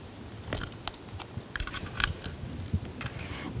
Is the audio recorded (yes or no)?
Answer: yes